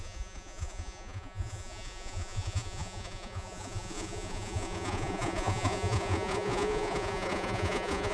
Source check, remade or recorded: remade